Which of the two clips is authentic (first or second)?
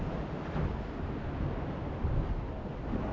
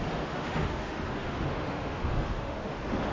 first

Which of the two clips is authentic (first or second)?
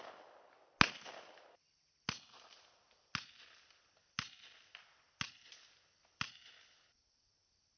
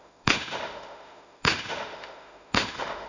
first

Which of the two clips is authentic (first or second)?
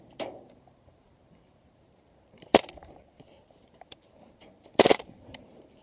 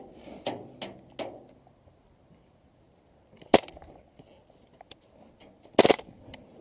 second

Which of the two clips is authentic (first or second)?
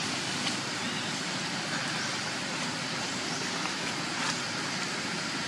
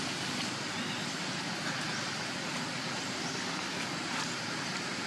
second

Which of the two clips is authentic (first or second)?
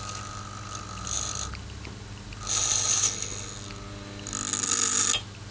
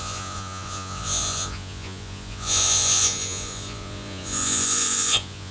first